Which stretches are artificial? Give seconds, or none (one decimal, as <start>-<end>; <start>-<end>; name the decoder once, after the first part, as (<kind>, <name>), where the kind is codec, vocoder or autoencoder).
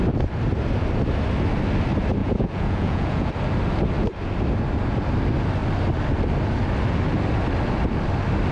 2.2-3.3 (vocoder, Vocos)